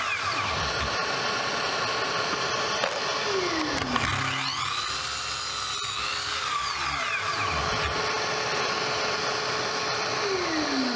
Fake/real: real